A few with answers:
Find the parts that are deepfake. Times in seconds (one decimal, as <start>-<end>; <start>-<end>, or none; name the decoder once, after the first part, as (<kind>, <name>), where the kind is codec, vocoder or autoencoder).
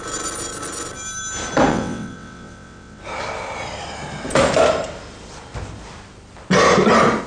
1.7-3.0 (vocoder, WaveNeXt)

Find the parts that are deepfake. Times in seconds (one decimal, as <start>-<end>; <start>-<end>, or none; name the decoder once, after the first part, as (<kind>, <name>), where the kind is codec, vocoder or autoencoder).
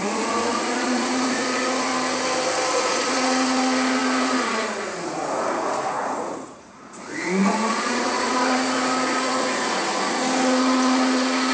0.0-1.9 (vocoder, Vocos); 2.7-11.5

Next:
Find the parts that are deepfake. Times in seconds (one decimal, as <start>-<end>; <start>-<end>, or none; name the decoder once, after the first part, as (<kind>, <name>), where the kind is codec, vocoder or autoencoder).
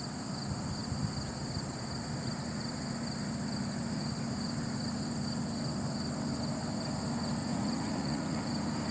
7.4-8.4 (vocoder, Vocos)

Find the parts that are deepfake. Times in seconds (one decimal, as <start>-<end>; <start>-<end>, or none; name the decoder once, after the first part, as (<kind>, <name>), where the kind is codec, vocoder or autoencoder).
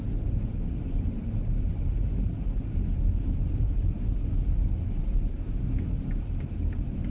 none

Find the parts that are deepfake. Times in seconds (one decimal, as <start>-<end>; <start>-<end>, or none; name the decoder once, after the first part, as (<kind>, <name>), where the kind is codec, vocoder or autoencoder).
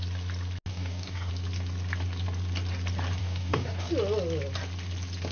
0.7-1.3 (codec, DAC); 3.2-3.9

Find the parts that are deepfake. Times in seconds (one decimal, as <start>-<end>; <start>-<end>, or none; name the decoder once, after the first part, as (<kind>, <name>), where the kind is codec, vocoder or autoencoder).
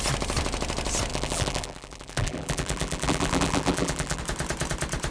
1.1-4.2 (vocoder, BigVGAN v2)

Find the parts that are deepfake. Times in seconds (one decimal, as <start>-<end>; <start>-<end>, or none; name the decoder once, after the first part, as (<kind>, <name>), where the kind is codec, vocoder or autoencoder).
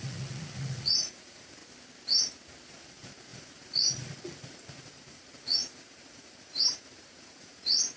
0.0-1.6 (vocoder, Vocos); 2.7-8.0